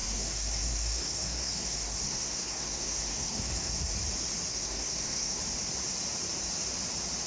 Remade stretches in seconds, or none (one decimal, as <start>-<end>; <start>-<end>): 0.0-3.9; 4.5-5.4